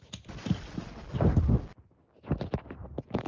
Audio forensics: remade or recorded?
recorded